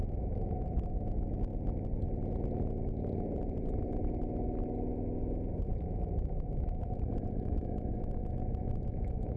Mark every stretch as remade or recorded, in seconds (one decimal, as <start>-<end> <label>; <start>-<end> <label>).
0.0-1.5 remade; 1.5-5.7 recorded; 5.7-9.4 remade